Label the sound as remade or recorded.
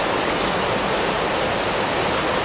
recorded